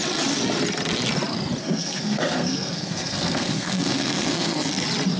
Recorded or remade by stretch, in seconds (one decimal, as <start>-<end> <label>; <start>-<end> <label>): 0.0-1.6 recorded; 1.6-4.7 remade; 4.7-5.2 recorded